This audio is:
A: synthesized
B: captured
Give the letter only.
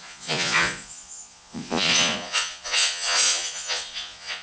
A